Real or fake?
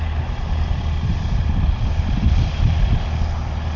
real